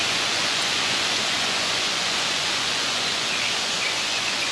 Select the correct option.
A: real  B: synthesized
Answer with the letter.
B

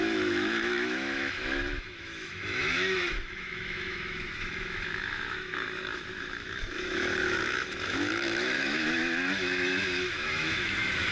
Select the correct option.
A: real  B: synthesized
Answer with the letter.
B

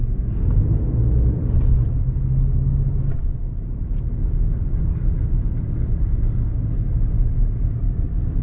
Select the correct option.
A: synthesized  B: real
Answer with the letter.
B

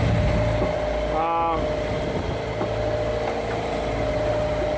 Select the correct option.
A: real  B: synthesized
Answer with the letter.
A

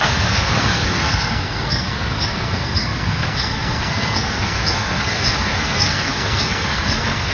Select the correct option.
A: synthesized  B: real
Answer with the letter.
A